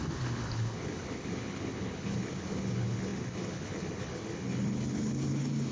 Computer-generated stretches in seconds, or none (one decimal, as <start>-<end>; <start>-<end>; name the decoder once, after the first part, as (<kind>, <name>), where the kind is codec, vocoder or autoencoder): 0.0-5.7 (codec, HILCodec)